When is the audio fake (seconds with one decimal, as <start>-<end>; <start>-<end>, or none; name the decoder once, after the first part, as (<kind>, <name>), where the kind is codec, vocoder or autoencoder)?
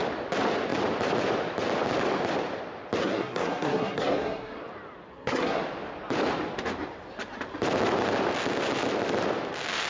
3.0-4.6 (codec, SNAC); 5.1-5.6